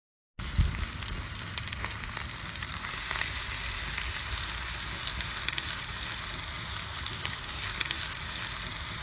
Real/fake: real